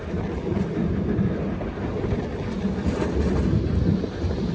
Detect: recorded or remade recorded